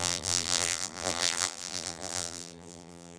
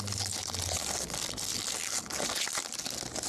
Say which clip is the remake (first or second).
first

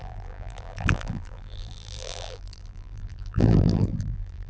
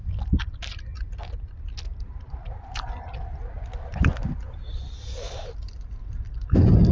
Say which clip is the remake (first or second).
first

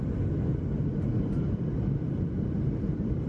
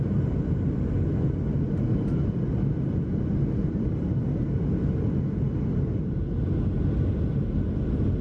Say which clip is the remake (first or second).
first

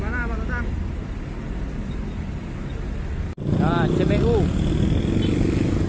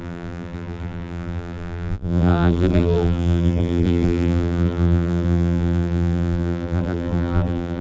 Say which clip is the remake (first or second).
second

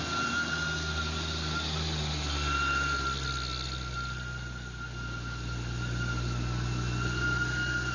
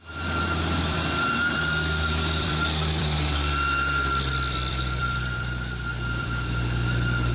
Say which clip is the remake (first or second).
second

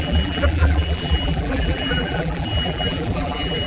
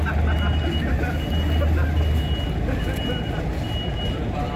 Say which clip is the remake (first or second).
first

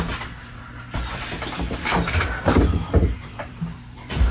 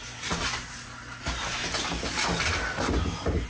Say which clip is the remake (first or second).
first